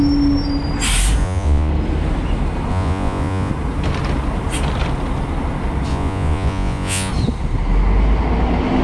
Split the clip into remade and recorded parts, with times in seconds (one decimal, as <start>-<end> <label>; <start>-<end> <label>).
0.0-1.2 recorded; 1.2-1.7 remade; 1.7-2.7 recorded; 2.7-3.5 remade; 3.5-5.9 recorded; 5.9-7.1 remade; 7.1-8.8 recorded